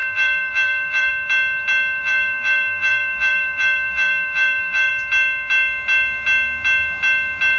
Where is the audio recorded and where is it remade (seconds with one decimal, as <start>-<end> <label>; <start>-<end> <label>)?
0.0-1.1 remade; 1.1-2.0 recorded; 2.0-4.9 remade; 4.9-7.6 recorded